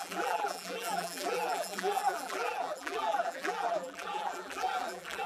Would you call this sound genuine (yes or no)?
no